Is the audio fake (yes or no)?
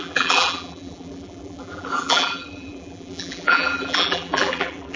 yes